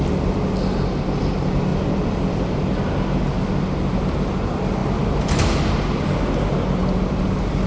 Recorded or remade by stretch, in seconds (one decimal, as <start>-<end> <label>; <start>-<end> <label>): 0.0-1.7 recorded; 1.7-2.6 remade; 2.6-4.8 recorded; 4.8-5.4 remade; 5.4-6.8 recorded; 6.8-7.7 remade